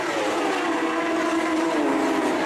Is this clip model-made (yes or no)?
yes